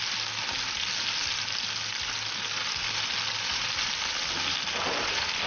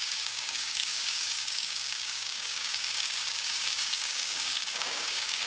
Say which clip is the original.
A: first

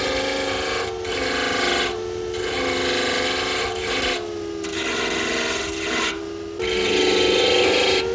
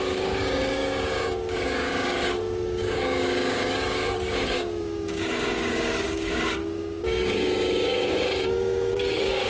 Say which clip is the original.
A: first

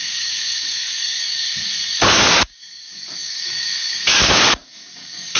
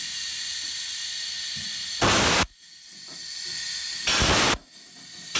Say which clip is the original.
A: second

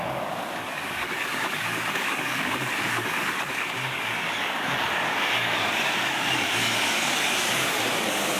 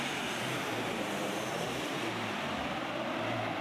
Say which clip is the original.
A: second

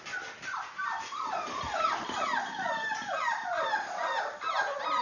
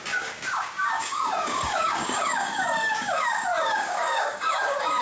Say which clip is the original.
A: first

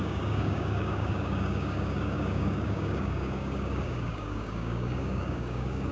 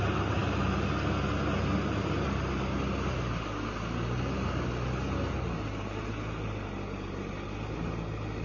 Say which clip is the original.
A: second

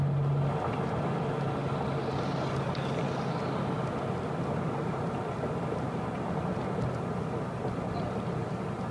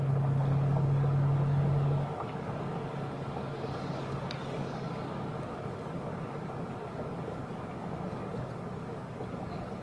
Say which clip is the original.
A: first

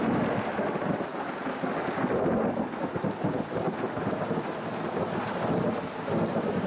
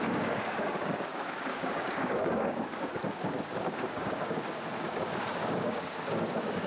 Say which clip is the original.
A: first